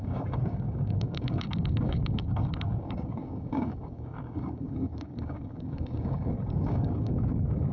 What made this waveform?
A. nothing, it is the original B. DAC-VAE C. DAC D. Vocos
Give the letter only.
C